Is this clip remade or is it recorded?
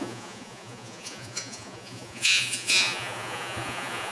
remade